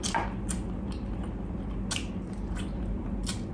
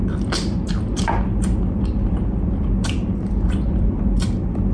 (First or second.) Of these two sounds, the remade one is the second